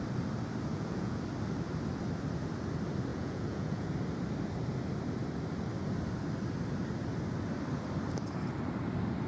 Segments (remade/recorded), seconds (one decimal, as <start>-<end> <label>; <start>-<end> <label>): 0.0-0.7 recorded; 0.7-1.2 remade; 1.2-3.1 recorded; 3.1-3.9 remade; 3.9-9.3 recorded